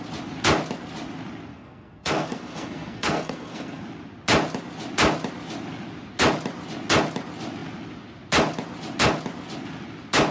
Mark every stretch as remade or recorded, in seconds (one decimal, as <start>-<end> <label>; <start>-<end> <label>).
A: 0.0-1.5 recorded; 1.5-3.8 remade; 3.8-10.3 recorded